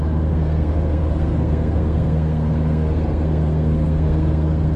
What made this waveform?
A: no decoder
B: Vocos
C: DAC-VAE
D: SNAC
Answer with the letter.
D